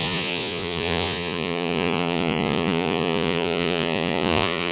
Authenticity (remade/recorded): remade